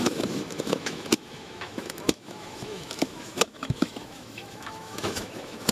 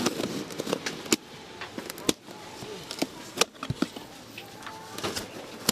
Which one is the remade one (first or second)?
first